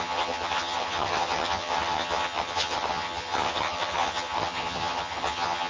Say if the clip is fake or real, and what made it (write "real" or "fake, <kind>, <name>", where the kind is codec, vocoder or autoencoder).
fake, vocoder, HiFi-GAN